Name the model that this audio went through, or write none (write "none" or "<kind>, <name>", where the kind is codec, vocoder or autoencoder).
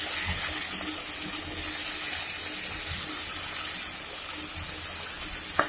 none